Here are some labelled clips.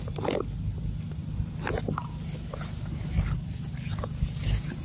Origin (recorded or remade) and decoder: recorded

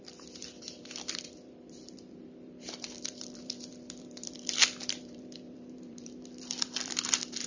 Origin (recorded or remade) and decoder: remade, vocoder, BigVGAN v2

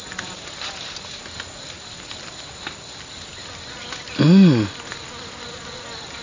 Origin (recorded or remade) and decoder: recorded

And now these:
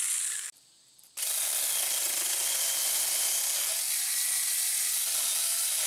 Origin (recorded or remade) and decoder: recorded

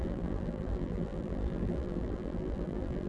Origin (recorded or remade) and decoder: remade, vocoder, BigVGAN v2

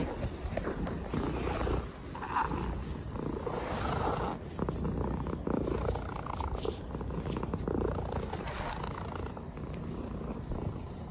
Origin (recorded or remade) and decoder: recorded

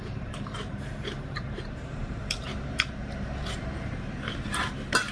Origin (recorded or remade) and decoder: remade, vocoder, BigVGAN v2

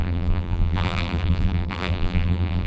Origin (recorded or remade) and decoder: remade, vocoder, BigVGAN v2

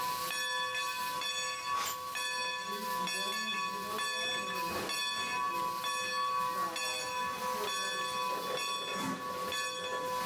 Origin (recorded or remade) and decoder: recorded